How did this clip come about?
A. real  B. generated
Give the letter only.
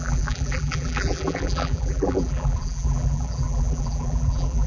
B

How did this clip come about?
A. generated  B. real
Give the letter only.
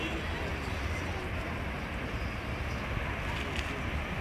B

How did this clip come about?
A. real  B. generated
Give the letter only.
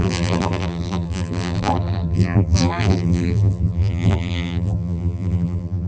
B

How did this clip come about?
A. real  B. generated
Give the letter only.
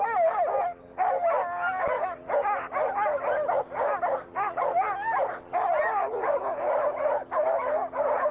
A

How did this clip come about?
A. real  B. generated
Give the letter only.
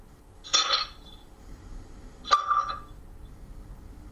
A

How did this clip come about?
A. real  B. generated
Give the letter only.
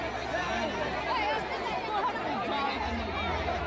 A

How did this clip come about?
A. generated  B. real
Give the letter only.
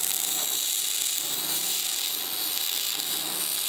B